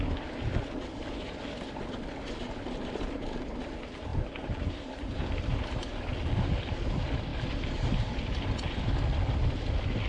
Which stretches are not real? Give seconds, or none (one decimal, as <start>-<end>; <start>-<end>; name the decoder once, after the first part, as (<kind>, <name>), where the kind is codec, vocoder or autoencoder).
4.1-5.9 (vocoder, BigVGAN v2); 7.3-7.9